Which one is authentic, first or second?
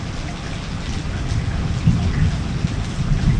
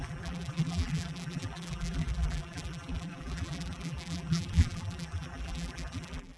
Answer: first